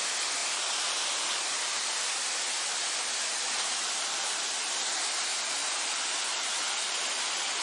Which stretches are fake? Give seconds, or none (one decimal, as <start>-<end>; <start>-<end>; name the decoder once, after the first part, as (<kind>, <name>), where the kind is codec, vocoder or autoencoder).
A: none